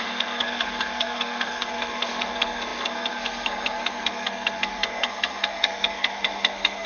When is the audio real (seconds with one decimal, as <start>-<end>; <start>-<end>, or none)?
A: none